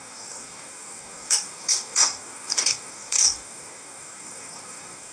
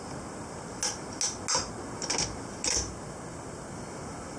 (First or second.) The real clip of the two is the second